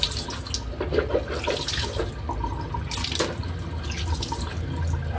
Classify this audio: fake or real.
real